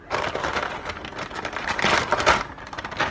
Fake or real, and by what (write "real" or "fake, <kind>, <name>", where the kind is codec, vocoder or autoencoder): real